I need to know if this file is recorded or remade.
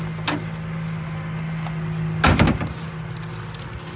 recorded